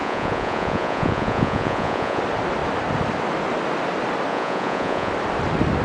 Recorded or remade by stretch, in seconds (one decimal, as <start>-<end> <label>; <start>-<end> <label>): 0.0-2.2 remade; 2.2-4.3 recorded; 4.3-5.1 remade; 5.1-5.8 recorded